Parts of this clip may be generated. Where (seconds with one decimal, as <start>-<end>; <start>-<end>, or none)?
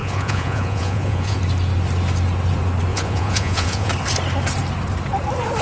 0.0-1.4; 2.9-3.9